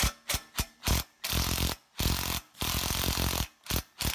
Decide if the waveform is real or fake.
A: real